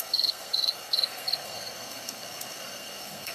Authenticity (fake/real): fake